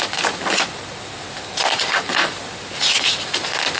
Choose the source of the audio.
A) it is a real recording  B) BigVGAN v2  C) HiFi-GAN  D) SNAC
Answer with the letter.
A